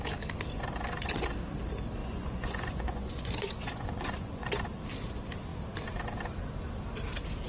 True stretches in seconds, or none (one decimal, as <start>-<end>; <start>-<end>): 0.0-2.0; 4.5-7.5

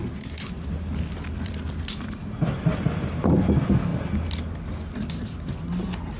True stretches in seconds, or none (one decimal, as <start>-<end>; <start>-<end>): 0.0-6.2

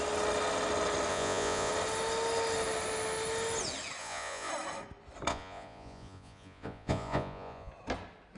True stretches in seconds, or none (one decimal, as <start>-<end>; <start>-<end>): 0.0-1.1; 1.7-4.0; 4.5-5.3; 7.7-8.4